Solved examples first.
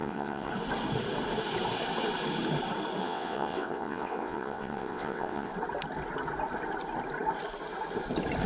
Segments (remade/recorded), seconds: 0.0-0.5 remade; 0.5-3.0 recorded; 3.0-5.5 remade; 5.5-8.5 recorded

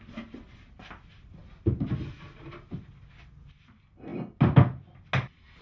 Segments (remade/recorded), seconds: 0.0-5.6 recorded

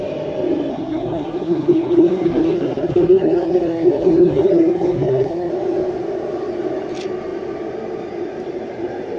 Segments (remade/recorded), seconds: 0.0-0.7 recorded; 0.7-5.5 remade; 5.5-9.2 recorded

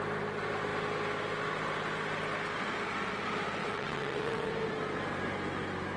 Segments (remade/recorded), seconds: 0.0-3.6 recorded; 3.6-4.5 remade; 4.5-6.0 recorded

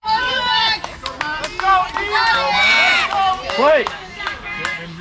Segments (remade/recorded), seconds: 0.0-0.6 remade; 0.6-3.5 recorded; 3.5-5.0 remade

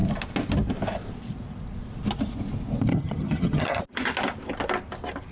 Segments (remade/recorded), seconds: 0.0-2.9 recorded; 2.9-3.8 remade; 3.8-5.3 recorded

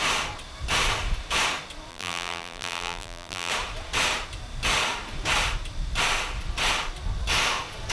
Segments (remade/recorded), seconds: 0.0-1.9 recorded; 1.9-3.5 remade; 3.5-7.9 recorded

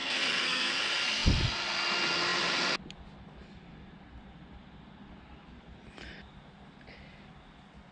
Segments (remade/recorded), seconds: 0.0-0.7 remade; 0.7-7.9 recorded